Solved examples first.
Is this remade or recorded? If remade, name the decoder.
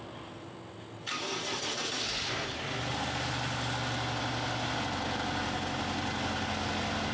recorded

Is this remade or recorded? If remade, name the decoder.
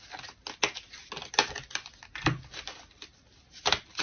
recorded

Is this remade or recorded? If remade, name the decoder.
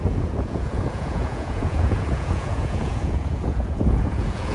remade, vocoder, Vocos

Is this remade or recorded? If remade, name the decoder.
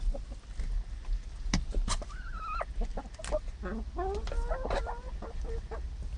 recorded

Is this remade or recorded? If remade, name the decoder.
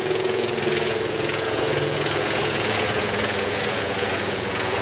remade, vocoder, Vocos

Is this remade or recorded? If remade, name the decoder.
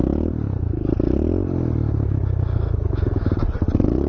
recorded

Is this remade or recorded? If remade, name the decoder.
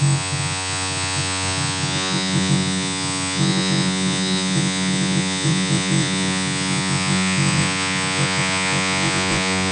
remade, vocoder, Vocos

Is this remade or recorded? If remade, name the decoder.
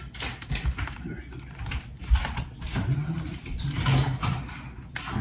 recorded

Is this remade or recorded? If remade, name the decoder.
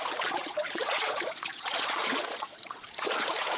remade, vocoder, Vocos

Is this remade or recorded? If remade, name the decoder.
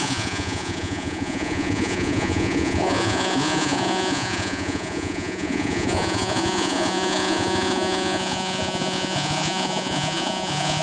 remade, vocoder, Vocos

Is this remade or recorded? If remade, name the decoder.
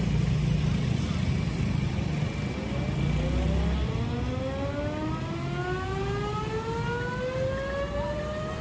recorded